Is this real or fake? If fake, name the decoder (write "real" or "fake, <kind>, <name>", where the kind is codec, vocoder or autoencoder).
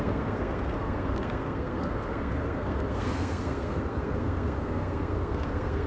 fake, codec, SNAC